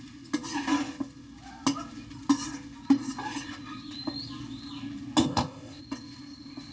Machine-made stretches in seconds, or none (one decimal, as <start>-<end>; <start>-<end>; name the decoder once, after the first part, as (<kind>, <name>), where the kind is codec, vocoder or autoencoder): 5.2-5.8 (codec, ZipCodec)